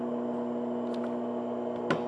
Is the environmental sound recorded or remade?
recorded